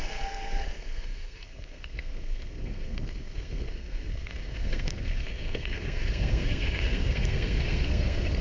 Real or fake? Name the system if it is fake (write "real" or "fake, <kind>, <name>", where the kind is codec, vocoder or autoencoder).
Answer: fake, codec, SNAC